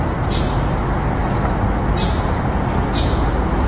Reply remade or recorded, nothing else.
recorded